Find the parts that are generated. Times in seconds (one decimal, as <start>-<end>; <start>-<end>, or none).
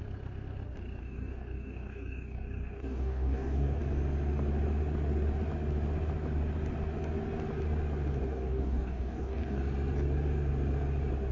1.0-3.8; 8.3-9.6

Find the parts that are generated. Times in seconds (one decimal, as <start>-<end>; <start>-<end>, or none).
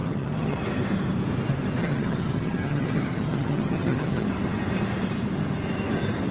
0.0-0.6; 1.8-4.3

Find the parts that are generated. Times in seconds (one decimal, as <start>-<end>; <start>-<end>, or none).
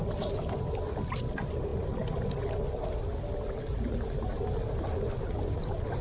none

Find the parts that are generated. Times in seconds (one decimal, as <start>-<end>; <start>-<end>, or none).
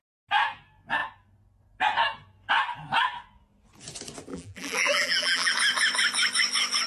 4.3-5.5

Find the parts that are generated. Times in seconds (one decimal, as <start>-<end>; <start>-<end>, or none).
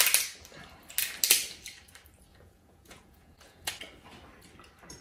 2.3-3.7